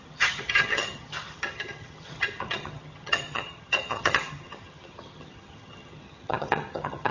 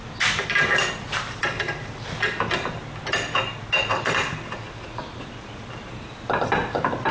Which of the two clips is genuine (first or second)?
second